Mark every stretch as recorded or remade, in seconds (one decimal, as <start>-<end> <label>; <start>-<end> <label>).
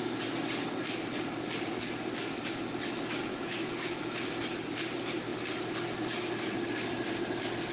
0.0-3.2 recorded; 3.2-4.4 remade; 4.4-7.7 recorded